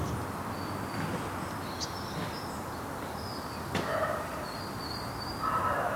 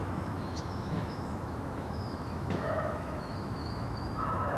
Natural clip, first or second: first